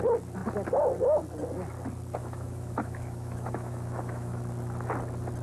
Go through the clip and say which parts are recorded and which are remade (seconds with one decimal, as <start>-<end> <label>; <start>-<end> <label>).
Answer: 0.0-2.2 recorded; 2.2-4.4 remade; 4.4-5.4 recorded